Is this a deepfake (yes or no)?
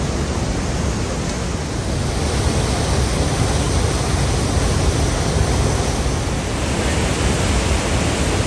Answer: no